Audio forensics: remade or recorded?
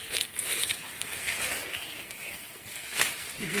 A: remade